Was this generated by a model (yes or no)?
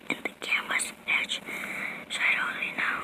no